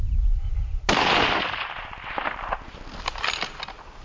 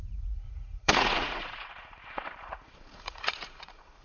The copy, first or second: second